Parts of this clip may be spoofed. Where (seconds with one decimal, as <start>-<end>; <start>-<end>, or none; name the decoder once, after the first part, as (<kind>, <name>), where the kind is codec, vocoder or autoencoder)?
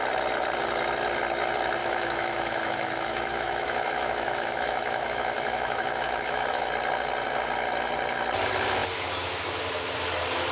1.8-6.7 (autoencoder, DAC-VAE)